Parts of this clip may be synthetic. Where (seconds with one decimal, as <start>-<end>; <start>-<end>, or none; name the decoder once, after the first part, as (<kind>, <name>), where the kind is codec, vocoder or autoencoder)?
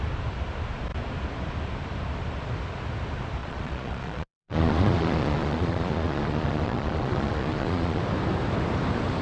3.4-8.0 (vocoder, Vocos)